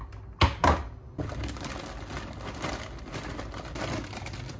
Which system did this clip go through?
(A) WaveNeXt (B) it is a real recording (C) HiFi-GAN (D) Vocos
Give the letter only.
B